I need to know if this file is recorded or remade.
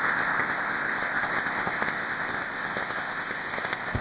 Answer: remade